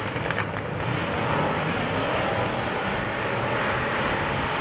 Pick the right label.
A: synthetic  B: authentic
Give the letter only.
B